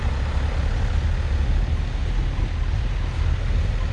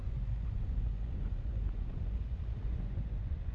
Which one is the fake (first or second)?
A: second